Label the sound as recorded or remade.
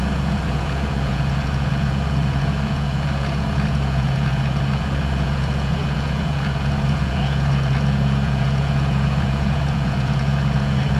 remade